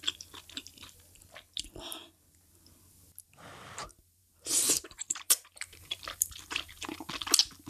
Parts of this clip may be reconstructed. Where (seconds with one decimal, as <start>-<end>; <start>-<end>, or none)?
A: 3.8-7.1